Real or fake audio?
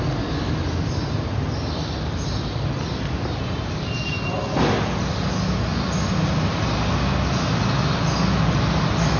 real